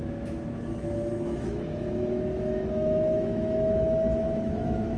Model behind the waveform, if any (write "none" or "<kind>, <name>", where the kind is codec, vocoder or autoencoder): autoencoder, DAC-VAE